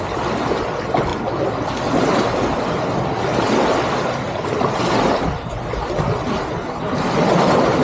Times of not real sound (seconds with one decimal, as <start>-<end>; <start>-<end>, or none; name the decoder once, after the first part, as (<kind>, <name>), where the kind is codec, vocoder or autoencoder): none